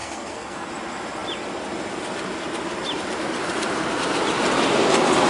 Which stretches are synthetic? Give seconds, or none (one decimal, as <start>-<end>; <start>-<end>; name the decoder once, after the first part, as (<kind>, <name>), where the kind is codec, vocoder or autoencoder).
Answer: 0.0-0.7 (codec, SNAC)